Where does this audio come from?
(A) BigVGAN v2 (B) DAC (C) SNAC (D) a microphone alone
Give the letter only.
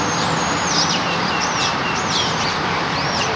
A